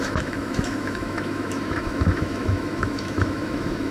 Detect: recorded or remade remade